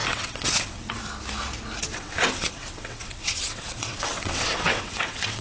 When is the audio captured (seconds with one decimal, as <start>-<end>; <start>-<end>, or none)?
1.0-1.9